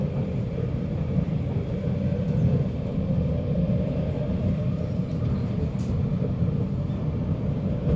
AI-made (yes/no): yes